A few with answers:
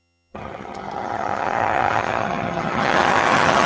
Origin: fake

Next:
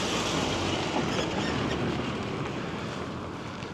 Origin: real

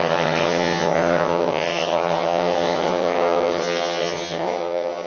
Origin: fake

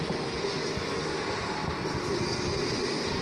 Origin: real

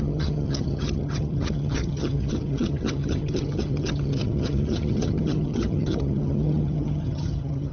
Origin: fake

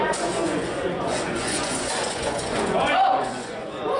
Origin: fake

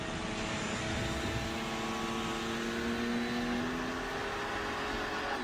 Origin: real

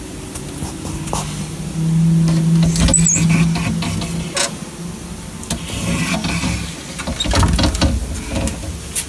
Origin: real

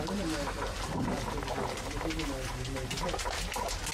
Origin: real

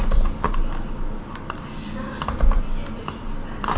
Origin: real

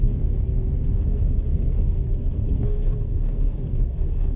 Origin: fake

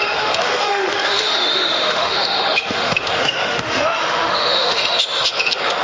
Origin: fake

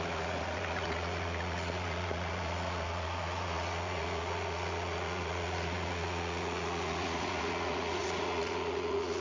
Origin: fake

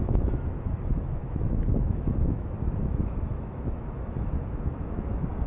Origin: fake